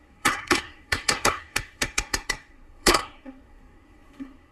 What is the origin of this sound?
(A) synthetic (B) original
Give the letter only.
A